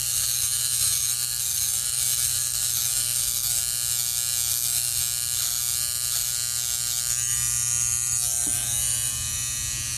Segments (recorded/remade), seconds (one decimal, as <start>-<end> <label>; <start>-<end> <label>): 0.0-3.6 remade; 3.6-4.5 recorded; 4.5-5.0 remade; 5.0-10.0 recorded